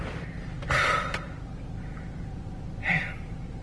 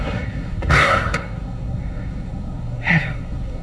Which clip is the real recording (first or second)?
first